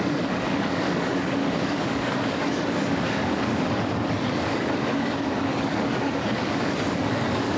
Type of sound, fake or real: fake